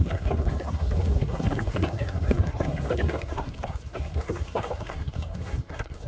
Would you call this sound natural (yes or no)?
no